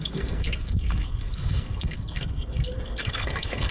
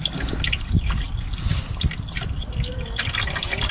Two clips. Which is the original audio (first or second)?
second